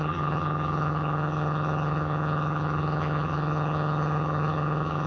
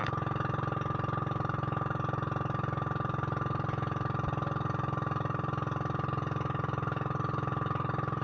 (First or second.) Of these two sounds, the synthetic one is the first